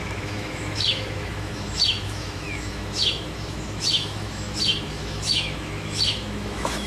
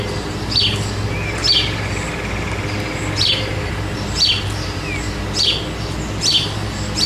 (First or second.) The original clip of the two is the second